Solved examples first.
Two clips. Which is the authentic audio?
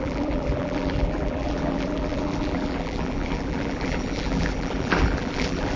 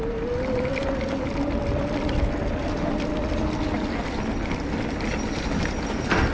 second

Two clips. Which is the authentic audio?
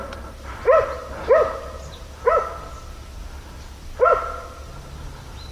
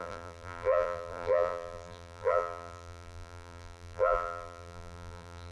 first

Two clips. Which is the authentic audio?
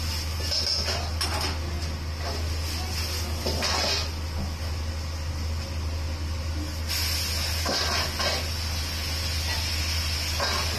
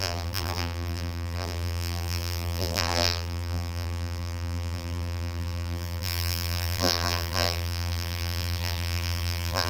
first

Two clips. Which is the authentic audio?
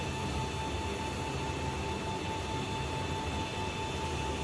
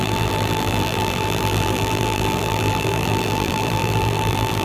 first